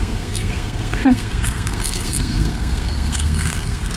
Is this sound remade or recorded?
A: remade